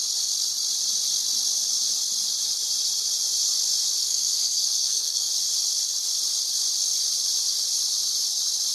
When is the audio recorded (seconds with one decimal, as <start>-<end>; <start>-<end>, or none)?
0.0-4.0; 5.3-8.7